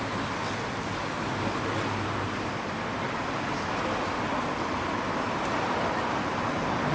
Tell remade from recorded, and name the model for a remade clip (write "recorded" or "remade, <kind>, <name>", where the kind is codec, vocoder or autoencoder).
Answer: recorded